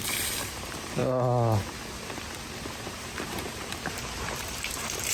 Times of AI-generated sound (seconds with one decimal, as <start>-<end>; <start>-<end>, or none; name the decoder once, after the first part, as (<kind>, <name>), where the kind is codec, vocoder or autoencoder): 0.0-1.0 (vocoder, BigVGAN v2); 2.9-5.1